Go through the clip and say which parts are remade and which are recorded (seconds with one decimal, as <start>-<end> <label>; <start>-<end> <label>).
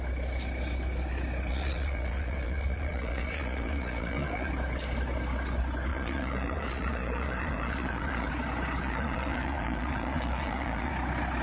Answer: 0.0-1.5 recorded; 1.5-4.5 remade; 4.5-5.9 recorded; 5.9-8.3 remade; 8.3-8.8 recorded; 8.8-10.9 remade; 10.9-11.4 recorded